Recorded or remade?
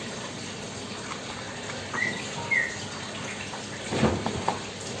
recorded